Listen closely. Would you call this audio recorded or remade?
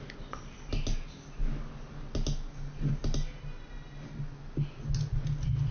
recorded